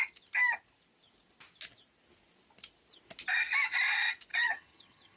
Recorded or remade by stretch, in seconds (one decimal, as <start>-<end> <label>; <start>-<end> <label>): 0.0-4.3 recorded; 4.3-5.2 remade

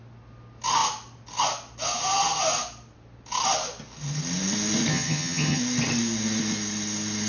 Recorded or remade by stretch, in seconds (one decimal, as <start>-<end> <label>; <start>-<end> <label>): 0.0-4.9 recorded; 4.9-5.6 remade; 5.6-7.3 recorded

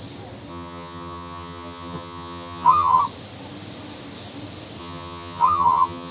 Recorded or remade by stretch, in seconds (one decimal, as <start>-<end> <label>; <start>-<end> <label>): 0.0-0.5 recorded; 0.5-3.0 remade; 3.0-4.8 recorded; 4.8-6.1 remade

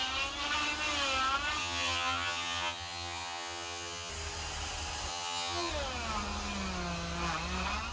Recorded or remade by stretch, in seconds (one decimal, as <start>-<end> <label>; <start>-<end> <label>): 0.0-1.6 recorded; 1.6-4.1 remade; 4.1-5.1 recorded; 5.1-5.7 remade; 5.7-7.9 recorded

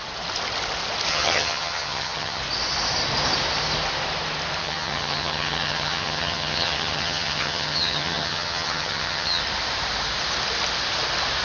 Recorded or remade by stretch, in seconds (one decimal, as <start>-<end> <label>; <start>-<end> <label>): 0.0-1.1 recorded; 1.1-2.4 remade; 2.4-4.6 recorded; 4.6-9.4 remade; 9.4-11.4 recorded